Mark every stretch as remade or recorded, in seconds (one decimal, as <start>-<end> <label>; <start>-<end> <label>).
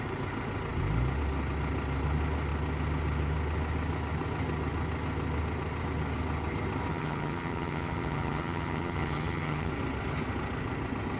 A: 0.0-6.9 recorded; 6.9-9.7 remade; 9.7-11.2 recorded